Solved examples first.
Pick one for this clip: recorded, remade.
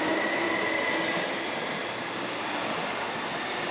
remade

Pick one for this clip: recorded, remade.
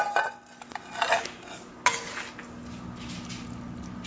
recorded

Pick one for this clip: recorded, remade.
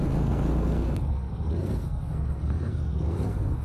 remade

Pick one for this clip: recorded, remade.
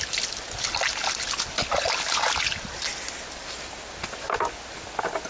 recorded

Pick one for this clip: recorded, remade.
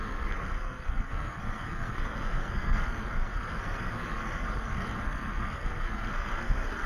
remade